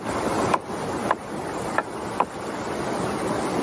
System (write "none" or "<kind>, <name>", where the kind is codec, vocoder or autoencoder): none